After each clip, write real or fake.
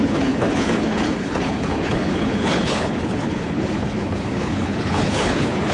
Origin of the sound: fake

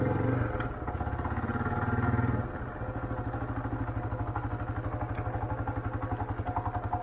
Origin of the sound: real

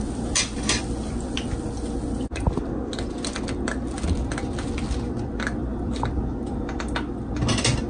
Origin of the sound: real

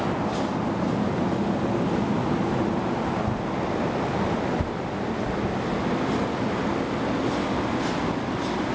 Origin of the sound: real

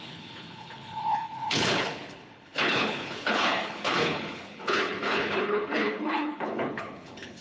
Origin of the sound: fake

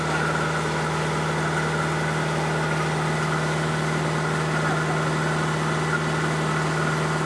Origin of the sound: real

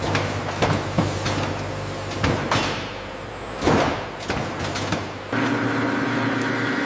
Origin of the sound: real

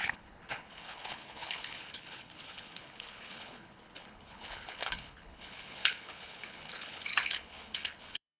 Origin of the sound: fake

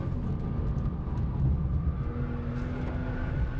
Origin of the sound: real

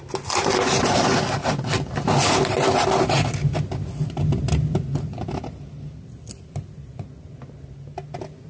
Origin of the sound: real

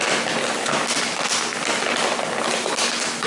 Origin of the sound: real